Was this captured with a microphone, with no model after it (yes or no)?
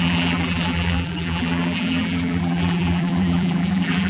no